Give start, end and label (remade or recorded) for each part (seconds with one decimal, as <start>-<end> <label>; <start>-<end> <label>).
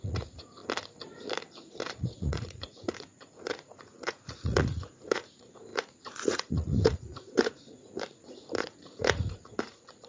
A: 0.0-0.6 remade; 0.6-1.7 recorded; 1.7-10.1 remade